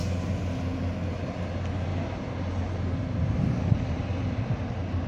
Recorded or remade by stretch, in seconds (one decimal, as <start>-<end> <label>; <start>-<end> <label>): 0.0-1.9 recorded; 1.9-4.5 remade; 4.5-5.1 recorded

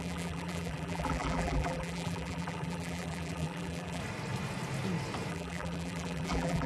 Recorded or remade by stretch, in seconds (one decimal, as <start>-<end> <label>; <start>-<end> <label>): 0.0-4.0 remade; 4.0-5.3 recorded; 5.3-6.7 remade

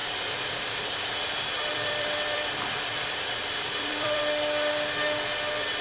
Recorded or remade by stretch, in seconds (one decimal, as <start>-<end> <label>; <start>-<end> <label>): 0.0-1.7 recorded; 1.7-4.2 remade; 4.2-5.8 recorded

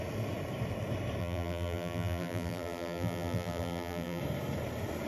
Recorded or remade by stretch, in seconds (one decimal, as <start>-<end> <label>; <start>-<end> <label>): 0.0-1.2 recorded; 1.2-4.2 remade; 4.2-5.1 recorded